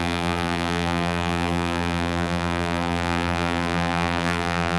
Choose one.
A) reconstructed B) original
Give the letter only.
A